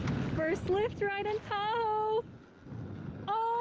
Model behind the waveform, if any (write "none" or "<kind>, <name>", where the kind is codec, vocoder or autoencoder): none